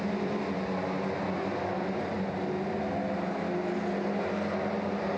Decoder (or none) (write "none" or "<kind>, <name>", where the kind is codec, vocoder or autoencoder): none